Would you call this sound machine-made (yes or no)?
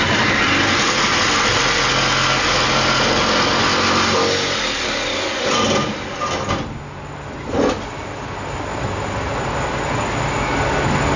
no